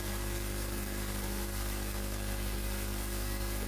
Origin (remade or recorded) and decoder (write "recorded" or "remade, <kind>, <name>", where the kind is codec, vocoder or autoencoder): remade, codec, SNAC